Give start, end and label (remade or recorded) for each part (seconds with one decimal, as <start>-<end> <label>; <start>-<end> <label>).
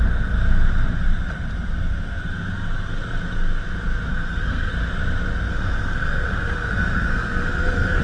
0.0-4.1 recorded; 4.1-4.7 remade; 4.7-5.5 recorded; 5.5-8.0 remade